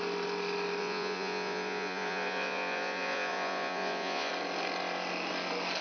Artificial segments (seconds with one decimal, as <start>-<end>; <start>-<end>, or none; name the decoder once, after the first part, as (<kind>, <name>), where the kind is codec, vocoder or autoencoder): 0.8-4.3 (vocoder, Vocos)